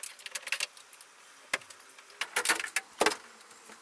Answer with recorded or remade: recorded